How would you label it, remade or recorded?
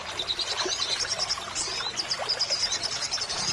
recorded